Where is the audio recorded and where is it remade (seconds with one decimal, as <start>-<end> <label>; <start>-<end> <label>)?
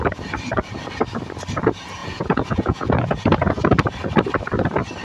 0.0-2.0 recorded; 2.0-3.6 remade; 3.6-5.0 recorded